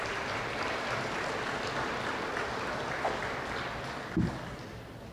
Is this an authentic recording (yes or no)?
yes